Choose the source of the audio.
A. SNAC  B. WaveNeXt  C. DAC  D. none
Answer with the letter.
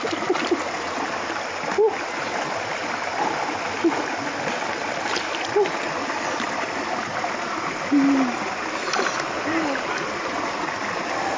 D